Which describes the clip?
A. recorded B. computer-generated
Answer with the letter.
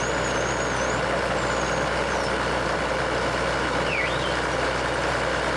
A